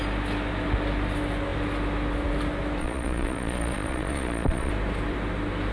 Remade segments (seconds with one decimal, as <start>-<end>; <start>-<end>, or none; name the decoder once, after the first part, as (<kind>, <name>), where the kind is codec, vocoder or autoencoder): 2.8-4.7 (vocoder, Vocos)